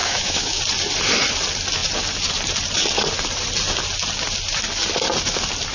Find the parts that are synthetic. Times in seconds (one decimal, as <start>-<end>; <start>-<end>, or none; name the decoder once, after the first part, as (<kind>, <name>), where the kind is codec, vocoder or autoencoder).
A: 0.0-0.6 (autoencoder, DAC-VAE)